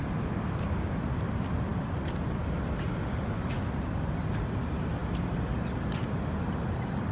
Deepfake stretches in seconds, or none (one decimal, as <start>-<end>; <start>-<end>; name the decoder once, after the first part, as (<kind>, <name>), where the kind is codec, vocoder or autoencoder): none